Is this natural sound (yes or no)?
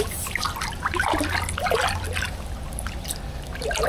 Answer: yes